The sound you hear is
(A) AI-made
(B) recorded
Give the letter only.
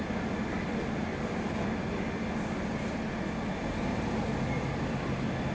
B